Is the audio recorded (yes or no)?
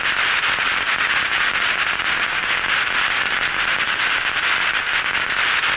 yes